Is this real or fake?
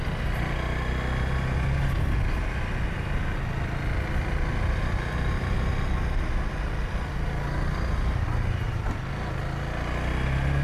real